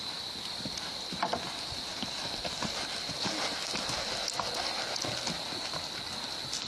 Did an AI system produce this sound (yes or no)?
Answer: no